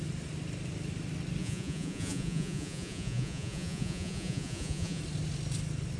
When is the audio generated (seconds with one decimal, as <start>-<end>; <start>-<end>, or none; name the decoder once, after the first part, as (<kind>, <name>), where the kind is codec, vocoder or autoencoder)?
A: 1.4-5.0 (vocoder, Vocos)